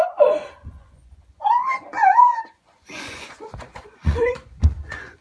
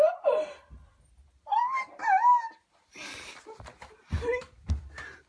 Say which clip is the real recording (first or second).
second